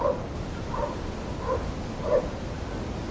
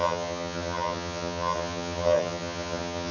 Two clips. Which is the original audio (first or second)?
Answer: first